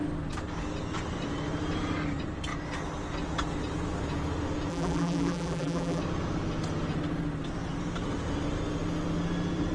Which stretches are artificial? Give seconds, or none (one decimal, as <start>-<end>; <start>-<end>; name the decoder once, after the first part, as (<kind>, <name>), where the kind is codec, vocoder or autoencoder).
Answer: 4.7-6.0 (vocoder, BigVGAN v2)